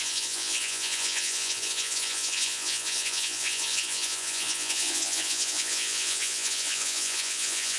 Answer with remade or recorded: remade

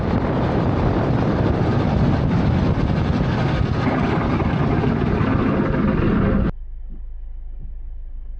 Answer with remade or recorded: recorded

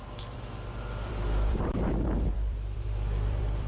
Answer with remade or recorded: remade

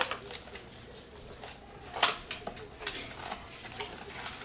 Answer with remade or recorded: recorded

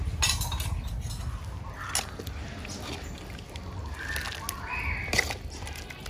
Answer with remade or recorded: recorded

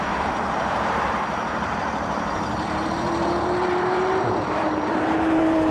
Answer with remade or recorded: remade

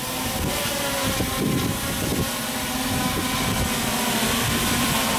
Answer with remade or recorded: recorded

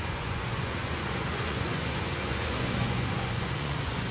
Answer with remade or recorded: remade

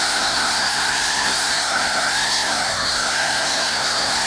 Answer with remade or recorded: remade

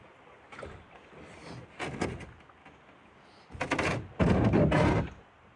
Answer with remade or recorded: recorded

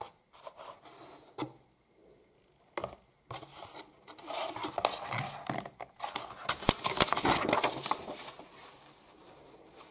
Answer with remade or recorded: recorded